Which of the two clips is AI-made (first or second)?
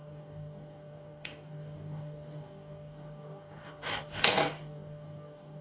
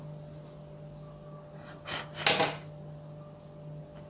first